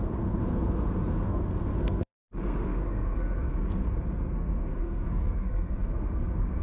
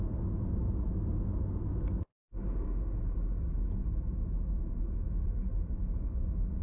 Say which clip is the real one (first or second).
second